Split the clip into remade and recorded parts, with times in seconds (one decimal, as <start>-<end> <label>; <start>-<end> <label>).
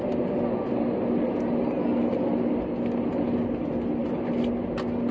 0.0-5.1 recorded